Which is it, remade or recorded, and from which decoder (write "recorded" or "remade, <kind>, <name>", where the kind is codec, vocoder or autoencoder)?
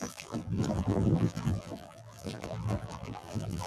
remade, vocoder, BigVGAN v2